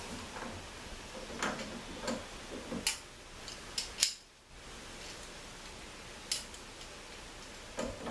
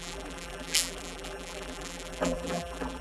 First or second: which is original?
first